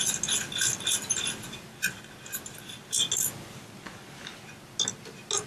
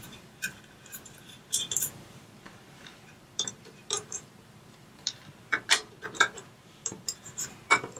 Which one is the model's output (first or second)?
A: second